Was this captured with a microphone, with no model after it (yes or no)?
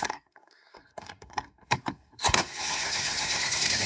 no